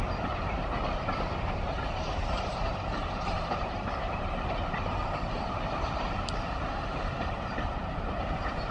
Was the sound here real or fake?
fake